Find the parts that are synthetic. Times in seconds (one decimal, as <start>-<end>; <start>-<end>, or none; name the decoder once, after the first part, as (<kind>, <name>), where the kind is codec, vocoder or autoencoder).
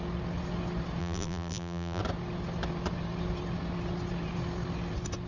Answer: 1.0-2.0 (vocoder, BigVGAN v2)